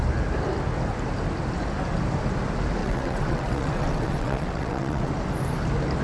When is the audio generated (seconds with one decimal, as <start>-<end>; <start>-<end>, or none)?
2.8-5.1

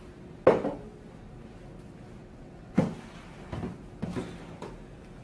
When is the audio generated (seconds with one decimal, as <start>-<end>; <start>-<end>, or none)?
2.2-2.8

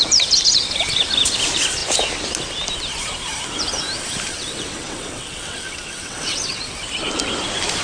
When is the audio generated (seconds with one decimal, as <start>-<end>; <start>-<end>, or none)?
4.3-6.7

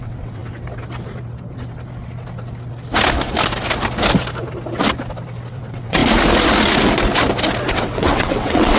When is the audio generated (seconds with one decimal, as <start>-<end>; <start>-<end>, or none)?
0.0-0.4; 5.5-6.0; 7.7-8.8

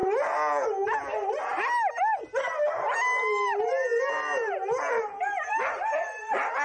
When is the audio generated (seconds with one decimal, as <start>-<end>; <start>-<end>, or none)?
none

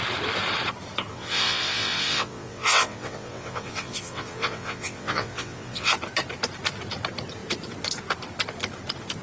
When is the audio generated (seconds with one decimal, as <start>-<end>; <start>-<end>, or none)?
1.1-5.9